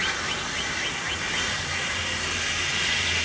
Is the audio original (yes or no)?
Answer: yes